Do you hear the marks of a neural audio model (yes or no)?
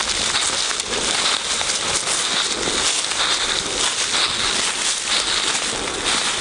no